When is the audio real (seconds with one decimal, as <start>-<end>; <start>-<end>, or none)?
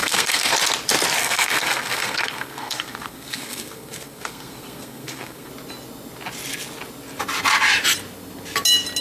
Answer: 0.5-1.2; 5.5-9.0